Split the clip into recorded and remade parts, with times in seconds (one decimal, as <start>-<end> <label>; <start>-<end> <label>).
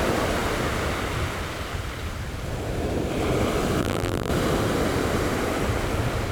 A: 0.0-3.8 recorded; 3.8-4.3 remade; 4.3-6.3 recorded